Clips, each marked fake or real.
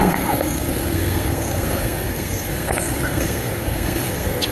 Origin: fake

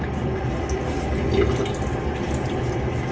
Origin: real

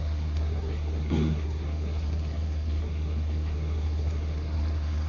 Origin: fake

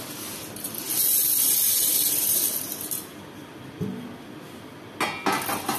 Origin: real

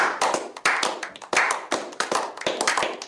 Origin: real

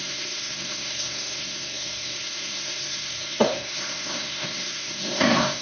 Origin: fake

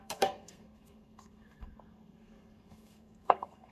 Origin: fake